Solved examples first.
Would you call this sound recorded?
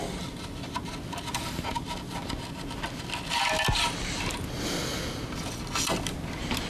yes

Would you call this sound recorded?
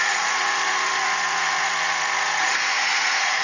no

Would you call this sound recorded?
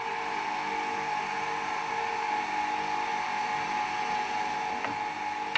yes